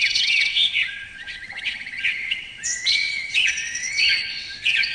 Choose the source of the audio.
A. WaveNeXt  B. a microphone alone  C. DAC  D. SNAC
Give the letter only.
A